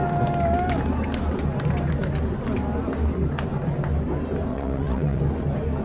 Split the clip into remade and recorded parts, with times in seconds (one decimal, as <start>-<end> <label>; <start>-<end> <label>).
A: 0.0-4.5 recorded; 4.5-5.2 remade; 5.2-5.8 recorded